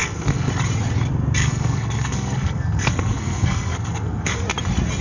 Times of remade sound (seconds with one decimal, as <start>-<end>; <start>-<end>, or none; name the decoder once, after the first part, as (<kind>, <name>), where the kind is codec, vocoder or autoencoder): 0.0-0.5 (codec, SNAC); 1.4-4.4